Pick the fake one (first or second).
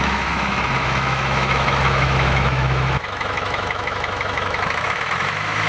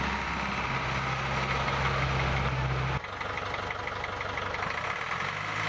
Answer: first